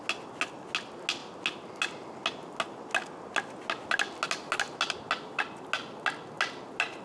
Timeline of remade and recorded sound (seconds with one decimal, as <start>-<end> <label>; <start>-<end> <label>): 0.0-7.0 recorded